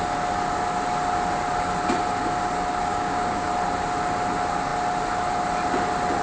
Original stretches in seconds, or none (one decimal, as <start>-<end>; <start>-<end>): 0.0-2.9; 3.5-6.2